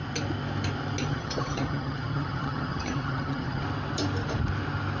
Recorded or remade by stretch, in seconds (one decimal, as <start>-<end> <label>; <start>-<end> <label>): 0.0-1.1 recorded; 1.1-3.6 remade; 3.6-5.0 recorded